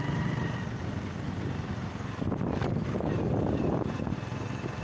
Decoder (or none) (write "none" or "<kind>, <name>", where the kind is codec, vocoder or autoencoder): none